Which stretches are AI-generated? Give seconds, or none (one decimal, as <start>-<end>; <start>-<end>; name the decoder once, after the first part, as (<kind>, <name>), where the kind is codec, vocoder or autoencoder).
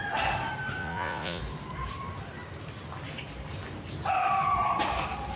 0.8-1.4 (vocoder, Vocos)